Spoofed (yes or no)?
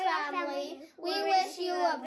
no